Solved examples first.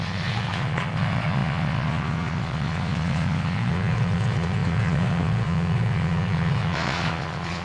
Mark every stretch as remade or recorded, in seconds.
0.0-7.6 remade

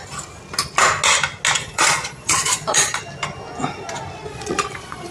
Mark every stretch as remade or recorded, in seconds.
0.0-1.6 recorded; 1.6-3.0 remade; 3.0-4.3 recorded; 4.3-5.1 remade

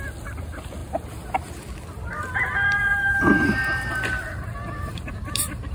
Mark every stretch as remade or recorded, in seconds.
0.0-5.7 recorded

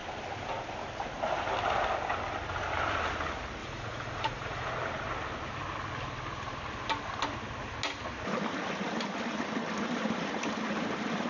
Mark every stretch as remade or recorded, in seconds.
0.0-3.6 recorded; 3.6-4.7 remade; 4.7-11.3 recorded